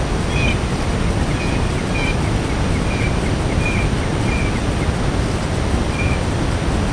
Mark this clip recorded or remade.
recorded